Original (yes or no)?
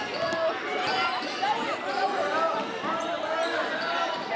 yes